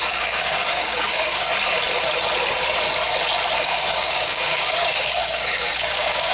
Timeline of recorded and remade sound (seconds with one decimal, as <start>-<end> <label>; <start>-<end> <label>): 0.0-1.5 remade; 1.5-3.6 recorded; 3.6-6.3 remade

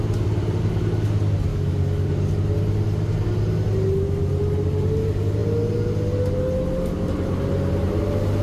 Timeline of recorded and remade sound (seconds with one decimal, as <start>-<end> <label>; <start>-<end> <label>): 0.0-1.5 recorded; 1.5-2.3 remade; 2.3-8.4 recorded

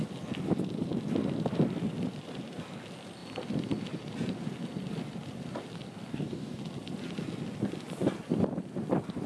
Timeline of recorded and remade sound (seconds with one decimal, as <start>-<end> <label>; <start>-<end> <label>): 0.0-6.1 recorded; 6.1-6.6 remade; 6.6-9.3 recorded

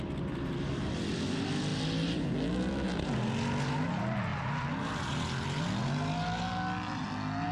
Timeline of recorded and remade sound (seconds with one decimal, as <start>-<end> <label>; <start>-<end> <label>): 0.0-7.5 recorded